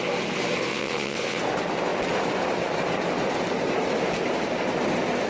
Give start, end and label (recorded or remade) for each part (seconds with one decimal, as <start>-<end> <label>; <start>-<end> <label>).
0.0-0.7 recorded; 0.7-1.4 remade; 1.4-5.3 recorded